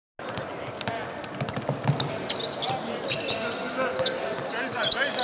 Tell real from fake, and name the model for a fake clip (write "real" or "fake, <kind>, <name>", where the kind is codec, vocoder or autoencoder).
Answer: real